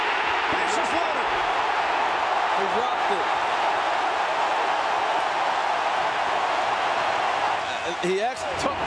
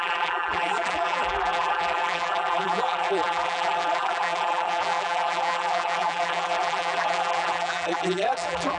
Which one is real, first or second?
first